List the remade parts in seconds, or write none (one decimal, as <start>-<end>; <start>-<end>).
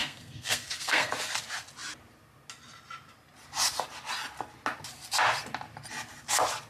0.0-1.1